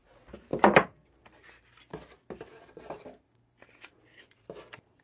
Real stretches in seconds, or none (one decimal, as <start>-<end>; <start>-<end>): 0.0-5.0